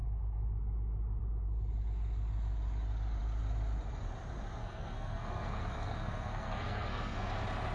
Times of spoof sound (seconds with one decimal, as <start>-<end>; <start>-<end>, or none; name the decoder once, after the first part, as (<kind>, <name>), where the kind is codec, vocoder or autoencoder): 4.6-7.3 (codec, SNAC)